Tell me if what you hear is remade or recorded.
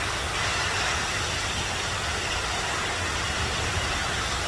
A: recorded